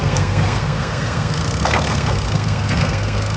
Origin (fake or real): fake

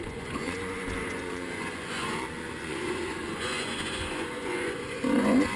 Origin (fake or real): fake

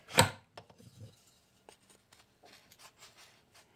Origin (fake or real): real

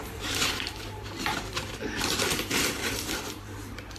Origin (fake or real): fake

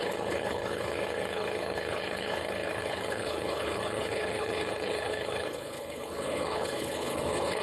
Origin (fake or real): fake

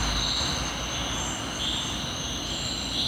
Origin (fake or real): real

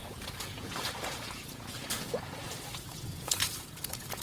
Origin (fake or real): fake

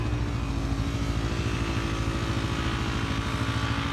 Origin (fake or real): real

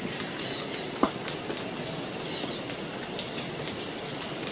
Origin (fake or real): real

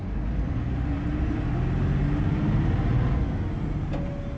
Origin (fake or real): real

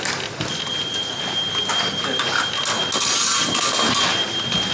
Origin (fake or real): real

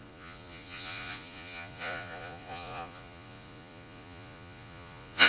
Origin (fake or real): fake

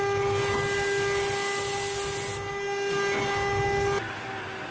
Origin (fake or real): real